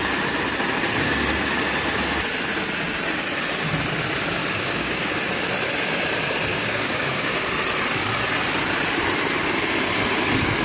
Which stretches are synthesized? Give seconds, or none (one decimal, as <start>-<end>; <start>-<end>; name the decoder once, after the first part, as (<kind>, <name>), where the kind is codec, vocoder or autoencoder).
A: 4.4-5.1 (codec, DAC); 6.5-7.5